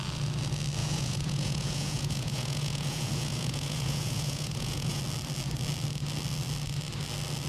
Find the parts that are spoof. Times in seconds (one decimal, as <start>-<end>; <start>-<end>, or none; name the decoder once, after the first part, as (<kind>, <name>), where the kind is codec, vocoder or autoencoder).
0.8-5.0 (vocoder, Vocos)